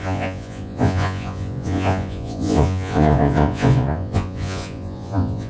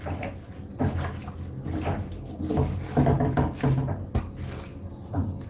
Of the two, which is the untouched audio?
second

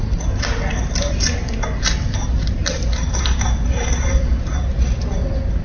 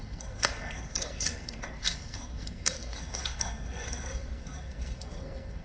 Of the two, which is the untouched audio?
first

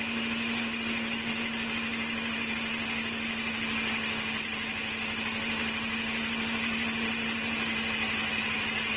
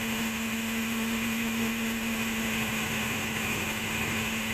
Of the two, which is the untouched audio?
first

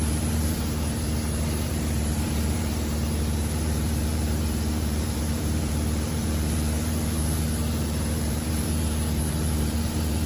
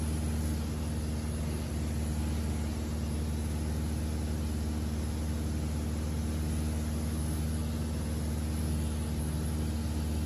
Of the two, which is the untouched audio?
second